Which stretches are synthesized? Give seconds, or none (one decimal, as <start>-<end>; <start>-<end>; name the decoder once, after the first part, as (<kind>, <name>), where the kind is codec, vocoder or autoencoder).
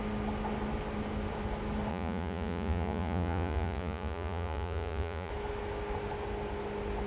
1.9-5.3 (vocoder, Vocos)